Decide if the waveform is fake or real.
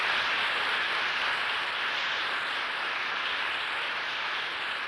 real